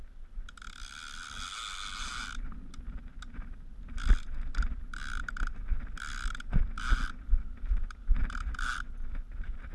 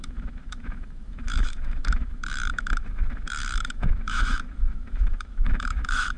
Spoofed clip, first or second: second